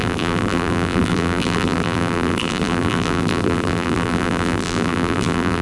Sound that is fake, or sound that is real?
fake